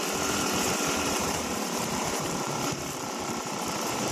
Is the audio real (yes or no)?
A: no